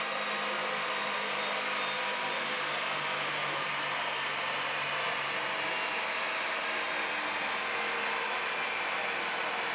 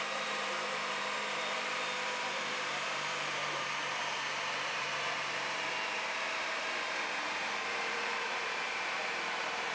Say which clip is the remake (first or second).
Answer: second